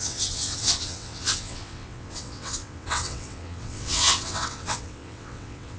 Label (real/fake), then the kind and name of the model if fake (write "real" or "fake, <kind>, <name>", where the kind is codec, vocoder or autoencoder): fake, vocoder, WaveNeXt